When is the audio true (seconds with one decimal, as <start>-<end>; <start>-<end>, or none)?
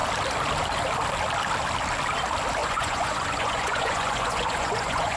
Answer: 0.0-2.6